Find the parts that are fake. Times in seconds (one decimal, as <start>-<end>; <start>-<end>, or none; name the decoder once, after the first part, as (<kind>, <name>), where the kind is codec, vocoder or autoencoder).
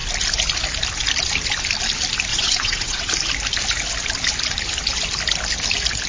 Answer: 2.3-3.1 (vocoder, WaveNeXt)